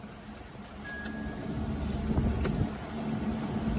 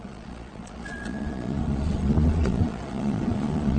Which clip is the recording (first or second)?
first